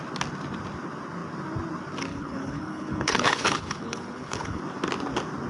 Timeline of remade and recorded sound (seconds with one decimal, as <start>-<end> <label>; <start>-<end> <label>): 0.0-2.1 recorded; 2.1-4.6 remade; 4.6-5.5 recorded